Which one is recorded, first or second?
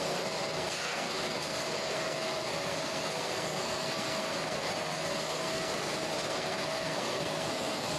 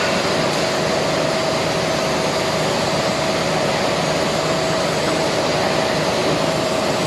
second